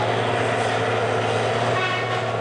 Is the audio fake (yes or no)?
no